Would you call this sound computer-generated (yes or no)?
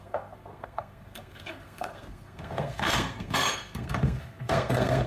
yes